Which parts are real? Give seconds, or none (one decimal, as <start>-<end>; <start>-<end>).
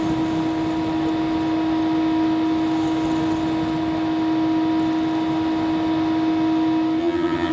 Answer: 0.0-7.0